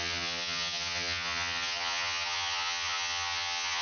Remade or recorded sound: remade